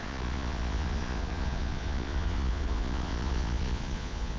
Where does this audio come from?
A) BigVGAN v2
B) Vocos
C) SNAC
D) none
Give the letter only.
B